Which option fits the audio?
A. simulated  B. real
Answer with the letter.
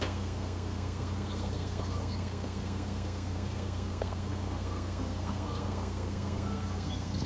A